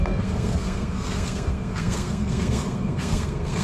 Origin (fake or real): fake